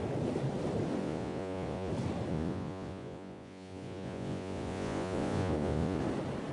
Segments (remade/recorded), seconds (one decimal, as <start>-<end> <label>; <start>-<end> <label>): 0.0-1.0 recorded; 1.0-1.9 remade; 1.9-2.3 recorded; 2.3-6.0 remade; 6.0-6.5 recorded